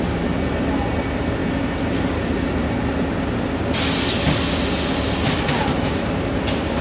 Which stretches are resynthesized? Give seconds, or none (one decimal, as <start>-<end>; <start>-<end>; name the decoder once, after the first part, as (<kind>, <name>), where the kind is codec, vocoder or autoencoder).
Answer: none